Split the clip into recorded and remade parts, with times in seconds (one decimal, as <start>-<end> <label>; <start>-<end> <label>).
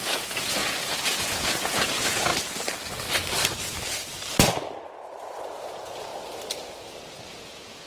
0.0-2.3 remade; 2.3-5.4 recorded; 5.4-6.1 remade; 6.1-7.3 recorded; 7.3-7.9 remade